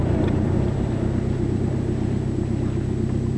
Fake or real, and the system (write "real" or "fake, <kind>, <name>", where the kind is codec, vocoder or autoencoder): real